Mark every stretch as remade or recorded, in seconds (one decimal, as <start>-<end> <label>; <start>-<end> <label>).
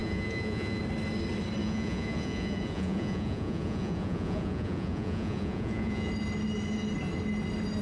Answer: 0.0-0.8 remade; 0.8-1.6 recorded; 1.6-6.1 remade; 6.1-7.8 recorded